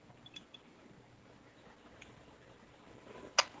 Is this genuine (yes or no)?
yes